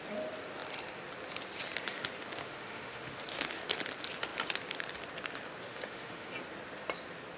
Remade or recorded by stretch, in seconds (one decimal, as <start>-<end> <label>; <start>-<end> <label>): 0.0-2.2 recorded; 2.2-3.6 remade; 3.6-5.7 recorded; 5.7-6.3 remade; 6.3-7.4 recorded

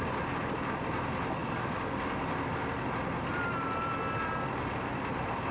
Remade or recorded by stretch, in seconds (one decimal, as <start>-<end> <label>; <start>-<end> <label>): 0.0-5.5 recorded

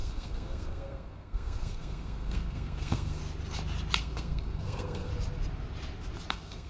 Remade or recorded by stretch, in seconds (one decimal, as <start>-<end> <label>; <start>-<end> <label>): 0.0-3.2 remade; 3.2-4.0 recorded; 4.0-5.1 remade; 5.1-6.3 recorded; 6.3-6.7 remade

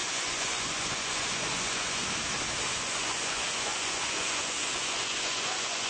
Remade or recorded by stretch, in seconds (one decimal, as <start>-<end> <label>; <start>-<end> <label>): 0.0-2.0 remade; 2.0-2.7 recorded; 2.7-5.9 remade

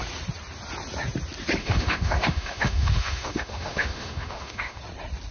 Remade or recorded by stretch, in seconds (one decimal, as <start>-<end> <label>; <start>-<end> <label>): 0.0-1.6 recorded; 1.6-4.8 remade; 4.8-5.3 recorded

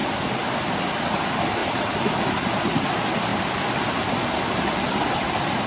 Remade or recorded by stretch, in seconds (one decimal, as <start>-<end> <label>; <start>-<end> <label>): 0.0-1.6 recorded; 1.6-2.8 remade; 2.8-3.3 recorded; 3.3-3.8 remade; 3.8-5.7 recorded